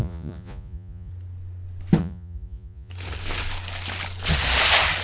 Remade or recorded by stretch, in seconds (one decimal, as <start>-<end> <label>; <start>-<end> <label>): 0.0-1.1 remade; 1.1-2.0 recorded; 2.0-2.9 remade; 2.9-5.0 recorded